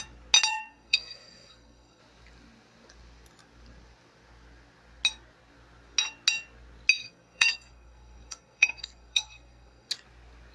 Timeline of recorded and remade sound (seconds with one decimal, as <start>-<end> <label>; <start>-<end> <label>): 0.0-0.5 recorded; 0.5-2.0 remade; 2.0-7.0 recorded; 7.0-9.9 remade; 9.9-10.5 recorded